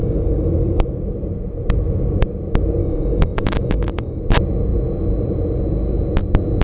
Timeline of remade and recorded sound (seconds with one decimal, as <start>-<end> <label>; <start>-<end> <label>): 0.0-0.9 remade; 0.9-2.8 recorded; 2.8-4.2 remade; 4.2-6.6 recorded

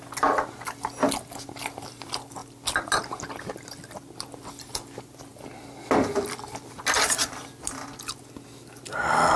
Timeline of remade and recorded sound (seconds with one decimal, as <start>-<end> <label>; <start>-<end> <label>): 0.0-5.3 recorded; 5.3-8.0 remade; 8.0-9.4 recorded

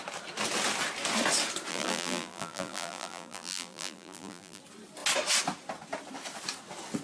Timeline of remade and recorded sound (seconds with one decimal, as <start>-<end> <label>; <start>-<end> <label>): 0.0-1.7 recorded; 1.7-4.6 remade; 4.6-7.0 recorded

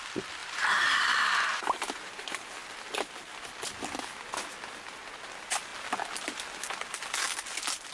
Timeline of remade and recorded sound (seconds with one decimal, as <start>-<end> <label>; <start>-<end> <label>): 0.0-0.4 recorded; 0.4-2.1 remade; 2.1-7.9 recorded

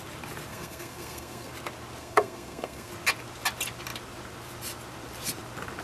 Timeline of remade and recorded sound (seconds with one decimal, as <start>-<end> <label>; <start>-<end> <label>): 0.0-0.5 recorded; 0.5-1.5 remade; 1.5-2.0 recorded; 2.0-2.9 remade; 2.9-5.8 recorded